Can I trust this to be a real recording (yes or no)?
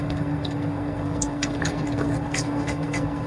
no